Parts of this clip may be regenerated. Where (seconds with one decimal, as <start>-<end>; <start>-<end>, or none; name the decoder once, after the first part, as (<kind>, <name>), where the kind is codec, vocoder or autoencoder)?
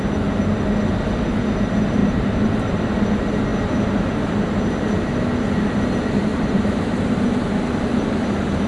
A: 2.0-2.8 (vocoder, BigVGAN v2); 6.3-7.8